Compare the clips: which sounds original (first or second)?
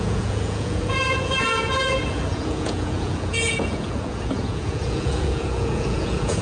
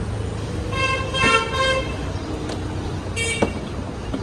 second